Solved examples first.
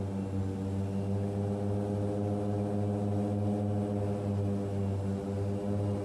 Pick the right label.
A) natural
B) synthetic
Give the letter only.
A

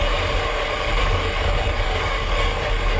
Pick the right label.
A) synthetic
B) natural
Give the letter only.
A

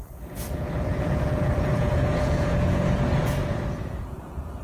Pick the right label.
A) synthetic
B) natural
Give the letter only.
A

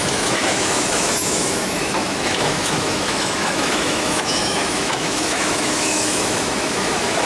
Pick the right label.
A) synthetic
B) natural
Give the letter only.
A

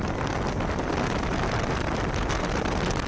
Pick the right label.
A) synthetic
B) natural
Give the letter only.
B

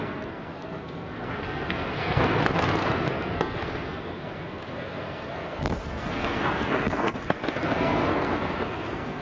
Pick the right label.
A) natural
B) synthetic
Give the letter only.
B